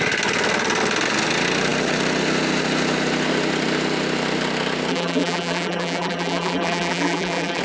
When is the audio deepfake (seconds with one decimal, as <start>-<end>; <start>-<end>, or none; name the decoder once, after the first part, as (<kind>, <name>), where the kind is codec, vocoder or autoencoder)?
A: 4.9-7.6 (vocoder, BigVGAN v2)